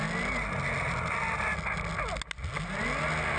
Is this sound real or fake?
real